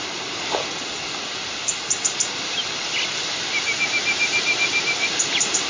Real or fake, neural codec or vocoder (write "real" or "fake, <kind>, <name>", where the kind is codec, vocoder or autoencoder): real